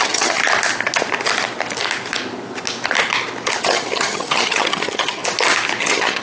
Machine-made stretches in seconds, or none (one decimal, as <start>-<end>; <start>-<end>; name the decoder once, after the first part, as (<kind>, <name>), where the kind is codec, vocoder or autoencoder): 0.0-0.4 (vocoder, HiFi-GAN); 3.6-5.2; 5.8-6.2